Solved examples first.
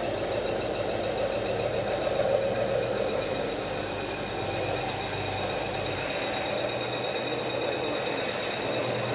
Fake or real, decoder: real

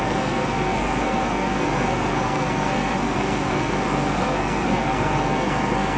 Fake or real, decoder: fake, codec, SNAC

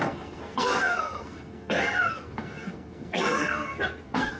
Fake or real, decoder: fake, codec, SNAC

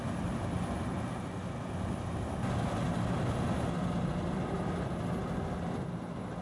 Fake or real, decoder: real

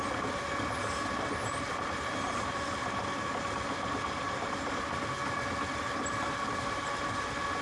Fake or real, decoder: real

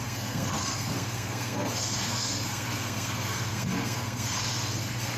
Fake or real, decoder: fake, codec, SNAC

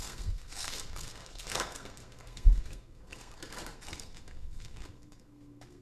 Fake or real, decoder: fake, codec, SNAC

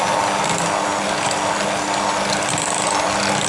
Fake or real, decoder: real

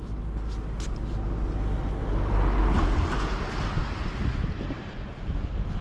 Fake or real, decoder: real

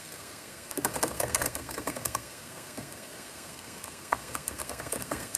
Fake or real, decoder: fake, codec, SNAC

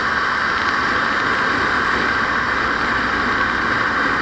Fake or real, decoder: real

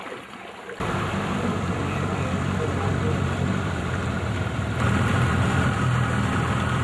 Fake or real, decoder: real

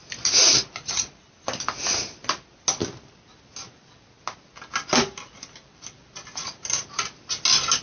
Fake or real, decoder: real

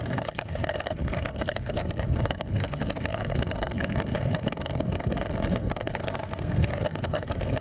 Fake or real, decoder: fake, codec, SNAC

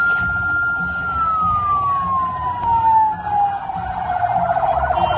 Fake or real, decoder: real